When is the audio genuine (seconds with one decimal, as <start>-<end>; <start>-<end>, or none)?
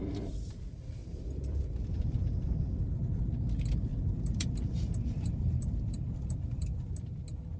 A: 0.0-1.0; 3.2-3.9; 6.9-7.6